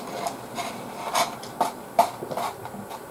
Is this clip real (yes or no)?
no